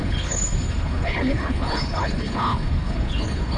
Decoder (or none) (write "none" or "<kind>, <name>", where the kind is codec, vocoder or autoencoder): codec, HILCodec